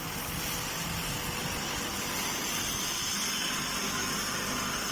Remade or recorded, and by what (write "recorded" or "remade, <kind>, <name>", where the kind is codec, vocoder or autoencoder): recorded